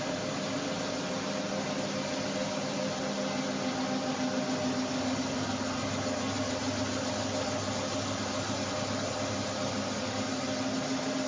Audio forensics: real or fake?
real